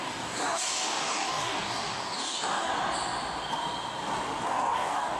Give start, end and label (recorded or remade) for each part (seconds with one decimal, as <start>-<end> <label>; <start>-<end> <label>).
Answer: 0.0-2.7 remade; 2.7-4.5 recorded; 4.5-5.2 remade